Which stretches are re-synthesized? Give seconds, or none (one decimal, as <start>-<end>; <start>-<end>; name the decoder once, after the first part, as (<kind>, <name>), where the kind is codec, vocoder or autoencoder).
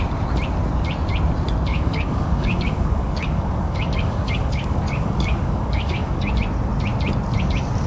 1.7-6.3 (codec, DAC)